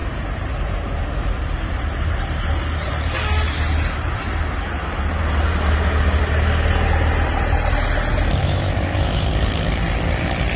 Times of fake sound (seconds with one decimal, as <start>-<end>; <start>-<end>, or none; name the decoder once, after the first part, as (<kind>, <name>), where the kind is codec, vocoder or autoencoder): 8.4-9.3 (autoencoder, DAC-VAE)